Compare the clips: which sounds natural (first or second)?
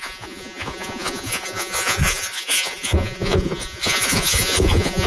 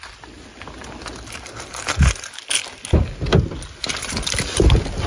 second